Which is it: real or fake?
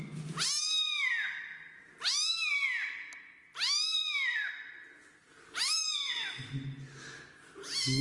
real